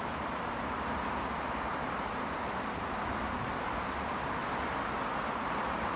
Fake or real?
real